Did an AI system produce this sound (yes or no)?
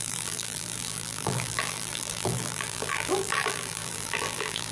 yes